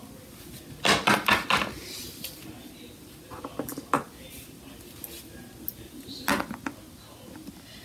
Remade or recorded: recorded